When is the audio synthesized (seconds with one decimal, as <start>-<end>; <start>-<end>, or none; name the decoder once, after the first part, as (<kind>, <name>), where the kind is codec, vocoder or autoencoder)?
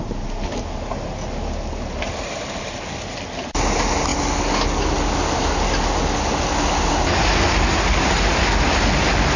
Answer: none